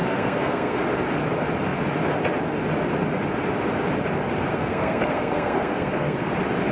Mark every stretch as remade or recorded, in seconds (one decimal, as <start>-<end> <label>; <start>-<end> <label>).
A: 0.0-0.8 remade; 0.8-4.5 recorded; 4.5-6.3 remade; 6.3-6.7 recorded